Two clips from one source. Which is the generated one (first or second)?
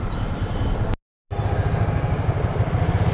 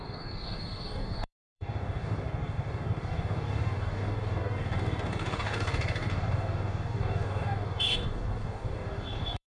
second